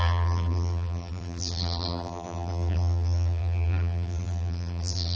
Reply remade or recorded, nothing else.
remade